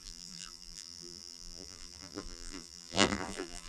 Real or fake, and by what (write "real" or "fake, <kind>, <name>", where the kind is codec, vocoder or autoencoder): fake, vocoder, BigVGAN v2